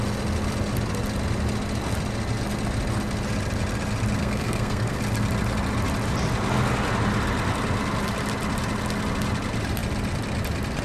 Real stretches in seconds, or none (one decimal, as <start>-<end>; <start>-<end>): 0.0-4.2; 5.0-10.8